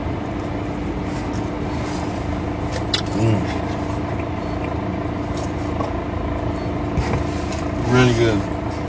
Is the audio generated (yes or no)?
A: no